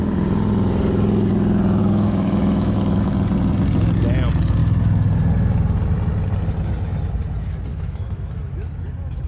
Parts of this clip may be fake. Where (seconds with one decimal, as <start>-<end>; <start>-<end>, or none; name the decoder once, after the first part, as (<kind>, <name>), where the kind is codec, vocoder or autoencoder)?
1.8-3.1 (autoencoder, DAC-VAE); 7.7-8.3